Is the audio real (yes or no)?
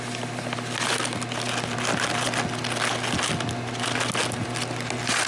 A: yes